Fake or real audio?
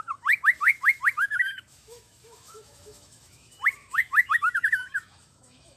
fake